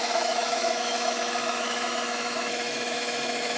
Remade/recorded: remade